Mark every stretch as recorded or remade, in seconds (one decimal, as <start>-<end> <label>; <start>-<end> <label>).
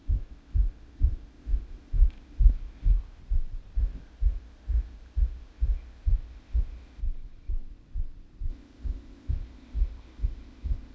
0.0-3.2 remade; 3.2-3.8 recorded; 3.8-7.0 remade; 7.0-8.5 recorded; 8.5-10.9 remade